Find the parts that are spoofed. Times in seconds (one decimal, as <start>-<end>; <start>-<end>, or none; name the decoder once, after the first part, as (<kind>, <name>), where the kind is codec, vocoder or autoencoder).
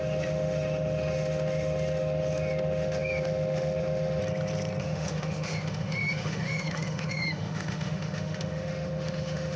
0.0-4.2 (autoencoder, DAC-VAE); 4.8-9.6